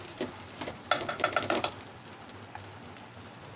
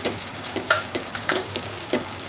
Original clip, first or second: first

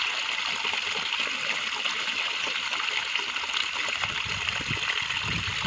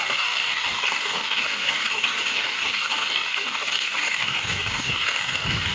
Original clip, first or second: first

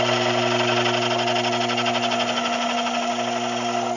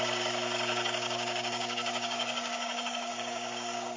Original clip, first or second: first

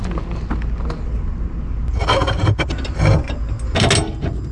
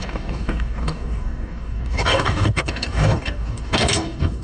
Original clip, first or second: first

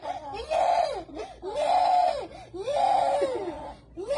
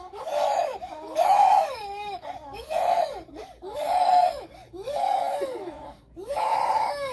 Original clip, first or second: first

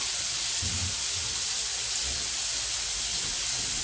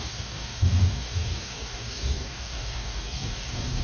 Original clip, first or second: first